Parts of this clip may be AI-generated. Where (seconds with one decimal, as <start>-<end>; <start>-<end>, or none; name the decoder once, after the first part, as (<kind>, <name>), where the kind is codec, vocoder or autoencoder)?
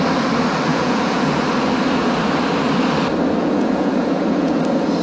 0.7-1.3 (vocoder, Vocos); 3.4-4.6